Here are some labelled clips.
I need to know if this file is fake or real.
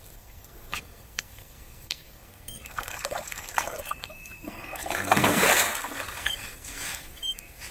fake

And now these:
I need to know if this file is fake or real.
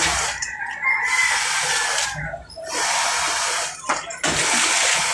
real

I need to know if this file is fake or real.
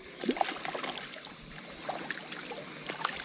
real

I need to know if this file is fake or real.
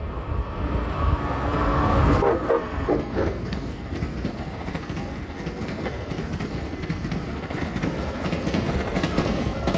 fake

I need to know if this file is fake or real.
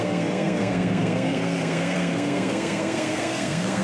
fake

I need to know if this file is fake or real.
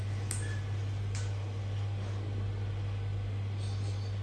real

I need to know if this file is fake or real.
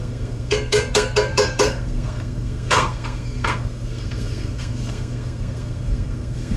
fake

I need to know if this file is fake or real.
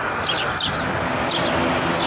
real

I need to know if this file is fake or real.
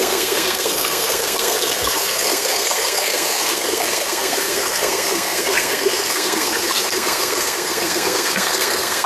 fake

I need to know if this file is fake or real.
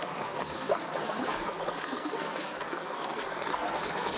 fake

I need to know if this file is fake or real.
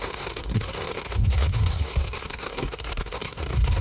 fake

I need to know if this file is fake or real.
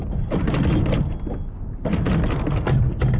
real